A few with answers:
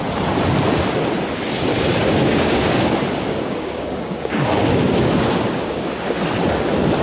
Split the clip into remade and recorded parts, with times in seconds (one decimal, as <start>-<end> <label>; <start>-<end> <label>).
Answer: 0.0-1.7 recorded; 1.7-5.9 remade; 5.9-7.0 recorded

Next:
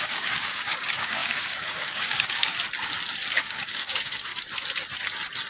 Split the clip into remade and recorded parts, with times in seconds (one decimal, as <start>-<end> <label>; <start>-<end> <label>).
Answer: 0.0-2.5 remade; 2.5-3.3 recorded; 3.3-4.3 remade; 4.3-5.5 recorded

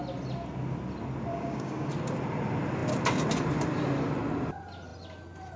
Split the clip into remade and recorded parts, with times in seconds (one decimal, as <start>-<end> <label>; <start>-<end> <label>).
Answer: 0.0-1.3 recorded; 1.3-1.9 remade; 1.9-5.6 recorded